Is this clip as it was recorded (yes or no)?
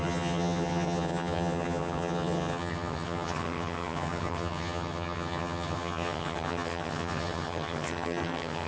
no